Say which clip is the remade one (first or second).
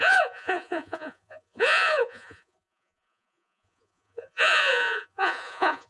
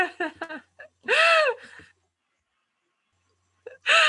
first